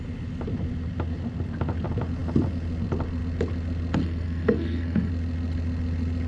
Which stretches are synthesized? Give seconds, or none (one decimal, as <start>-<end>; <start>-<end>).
4.0-5.1